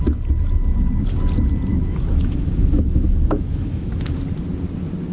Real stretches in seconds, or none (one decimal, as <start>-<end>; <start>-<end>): 0.0-1.7; 4.1-5.1